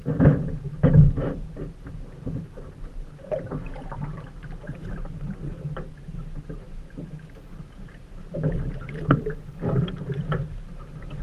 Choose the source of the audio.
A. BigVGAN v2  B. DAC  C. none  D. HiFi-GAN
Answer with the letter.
A